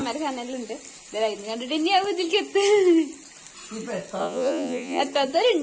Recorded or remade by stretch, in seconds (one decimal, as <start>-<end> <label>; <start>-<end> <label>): 0.0-4.2 recorded; 4.2-5.0 remade; 5.0-5.6 recorded